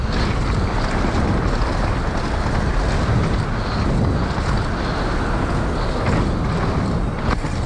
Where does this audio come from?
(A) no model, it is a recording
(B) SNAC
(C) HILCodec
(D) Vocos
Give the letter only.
A